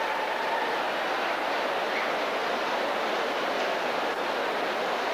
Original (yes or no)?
yes